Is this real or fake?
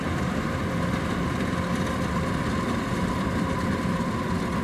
real